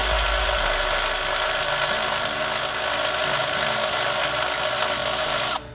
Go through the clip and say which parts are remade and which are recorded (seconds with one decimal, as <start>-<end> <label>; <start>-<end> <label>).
0.0-5.7 recorded